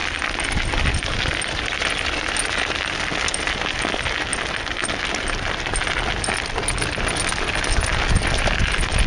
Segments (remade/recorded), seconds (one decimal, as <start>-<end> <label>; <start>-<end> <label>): 0.0-9.1 recorded